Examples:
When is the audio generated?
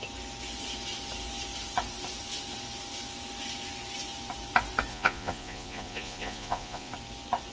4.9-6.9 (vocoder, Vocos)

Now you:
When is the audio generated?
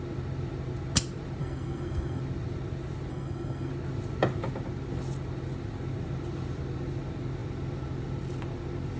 1.4-2.2 (codec, SNAC); 3.1-3.7